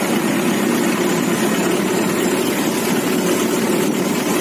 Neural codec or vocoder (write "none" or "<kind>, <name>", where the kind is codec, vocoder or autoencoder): none